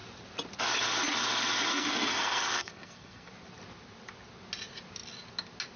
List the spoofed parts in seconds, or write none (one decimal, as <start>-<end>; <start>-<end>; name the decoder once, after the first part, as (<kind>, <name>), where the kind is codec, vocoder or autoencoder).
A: 1.7-3.3 (codec, SNAC)